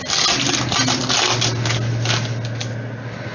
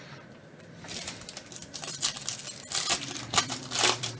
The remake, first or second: second